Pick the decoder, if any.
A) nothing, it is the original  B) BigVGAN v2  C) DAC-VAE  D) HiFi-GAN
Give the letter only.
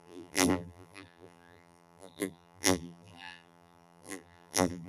B